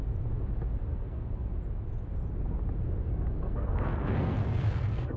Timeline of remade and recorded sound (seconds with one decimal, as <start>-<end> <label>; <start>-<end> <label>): 0.0-0.9 recorded; 0.9-1.5 remade; 1.5-3.1 recorded; 3.1-5.2 remade